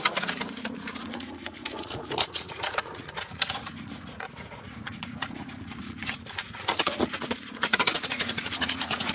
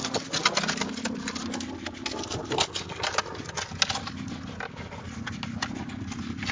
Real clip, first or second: second